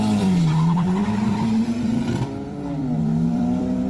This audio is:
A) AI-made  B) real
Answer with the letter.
A